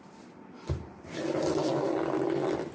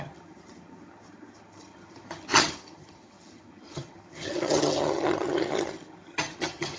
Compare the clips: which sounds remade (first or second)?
second